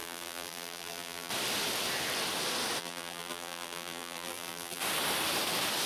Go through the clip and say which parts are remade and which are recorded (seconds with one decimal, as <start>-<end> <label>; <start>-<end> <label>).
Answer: 0.0-1.3 remade; 1.3-2.8 recorded; 2.8-4.8 remade; 4.8-5.9 recorded